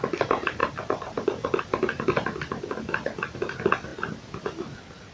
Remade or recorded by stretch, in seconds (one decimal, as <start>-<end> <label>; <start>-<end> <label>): 0.0-5.1 recorded